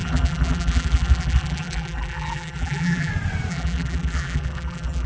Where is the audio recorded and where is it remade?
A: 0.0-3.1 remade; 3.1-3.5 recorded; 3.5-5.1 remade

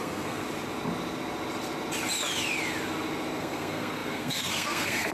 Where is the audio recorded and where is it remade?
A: 0.0-0.4 remade; 0.4-3.4 recorded; 3.4-5.1 remade

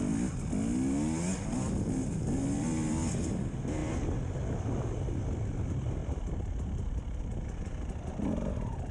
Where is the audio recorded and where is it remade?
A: 0.0-8.9 recorded